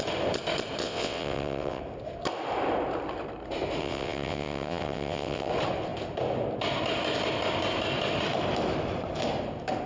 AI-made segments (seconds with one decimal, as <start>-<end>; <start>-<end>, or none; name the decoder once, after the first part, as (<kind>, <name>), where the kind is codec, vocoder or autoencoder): 0.8-1.8 (vocoder, WaveNeXt); 3.8-5.5